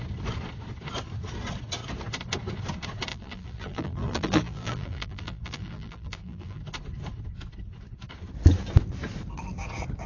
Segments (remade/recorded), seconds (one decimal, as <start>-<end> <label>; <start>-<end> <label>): 0.0-3.1 recorded; 3.1-6.6 remade; 6.6-10.1 recorded